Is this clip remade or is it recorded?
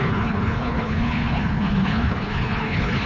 remade